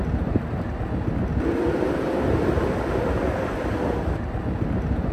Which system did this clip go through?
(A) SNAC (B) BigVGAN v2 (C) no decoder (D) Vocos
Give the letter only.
C